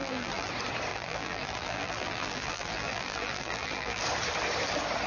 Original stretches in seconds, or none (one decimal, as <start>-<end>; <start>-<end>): 0.5-0.9; 4.0-5.1